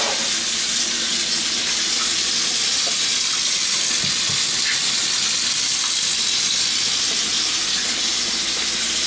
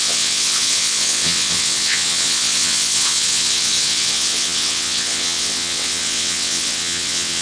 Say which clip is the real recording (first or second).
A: first